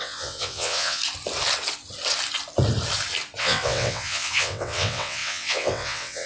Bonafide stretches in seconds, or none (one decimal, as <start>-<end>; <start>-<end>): 1.0-3.4